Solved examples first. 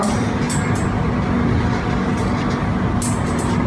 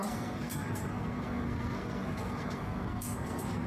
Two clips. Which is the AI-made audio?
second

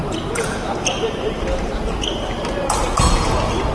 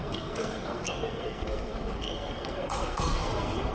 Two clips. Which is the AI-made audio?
second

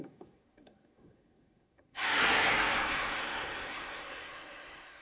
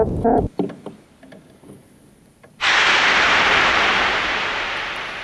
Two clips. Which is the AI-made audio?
first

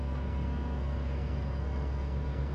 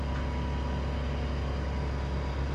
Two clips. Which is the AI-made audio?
first